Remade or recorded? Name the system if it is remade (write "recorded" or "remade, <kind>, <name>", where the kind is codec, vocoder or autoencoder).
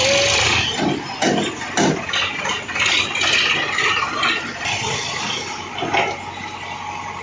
recorded